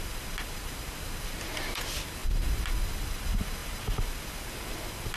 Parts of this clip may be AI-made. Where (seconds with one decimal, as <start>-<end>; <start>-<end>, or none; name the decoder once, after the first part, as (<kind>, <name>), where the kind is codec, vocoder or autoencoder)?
none